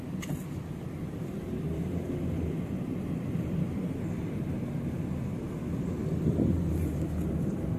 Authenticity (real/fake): fake